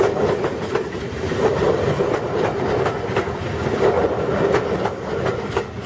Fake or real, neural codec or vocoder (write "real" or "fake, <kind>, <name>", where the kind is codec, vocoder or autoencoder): real